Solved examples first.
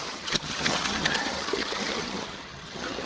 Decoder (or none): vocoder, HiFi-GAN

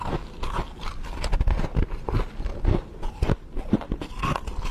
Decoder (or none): none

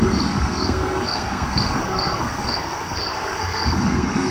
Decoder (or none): codec, SNAC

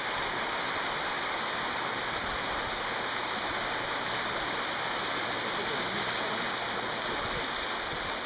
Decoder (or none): none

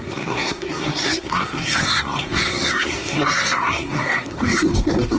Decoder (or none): codec, SNAC